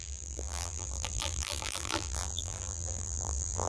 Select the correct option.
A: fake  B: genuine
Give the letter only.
A